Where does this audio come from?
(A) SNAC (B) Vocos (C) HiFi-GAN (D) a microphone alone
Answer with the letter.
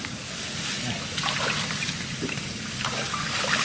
D